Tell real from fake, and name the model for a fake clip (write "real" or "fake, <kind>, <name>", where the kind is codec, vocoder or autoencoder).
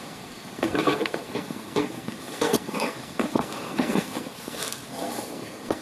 fake, codec, SNAC